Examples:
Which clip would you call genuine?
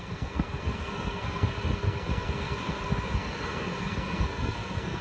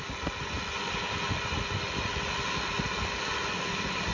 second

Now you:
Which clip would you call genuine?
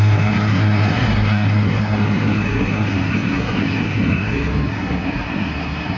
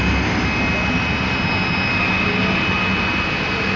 second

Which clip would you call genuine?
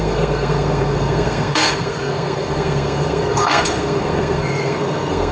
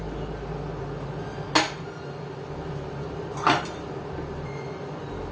second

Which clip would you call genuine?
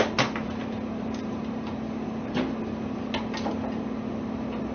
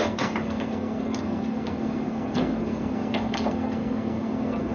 first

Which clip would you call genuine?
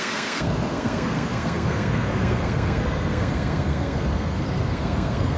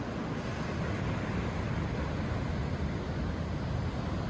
second